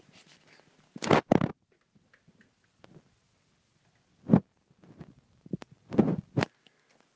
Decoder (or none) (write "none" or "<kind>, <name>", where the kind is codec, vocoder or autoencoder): none